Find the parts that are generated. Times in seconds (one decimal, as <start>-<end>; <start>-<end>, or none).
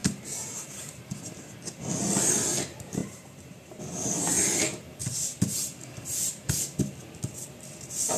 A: 0.0-1.8; 3.0-3.8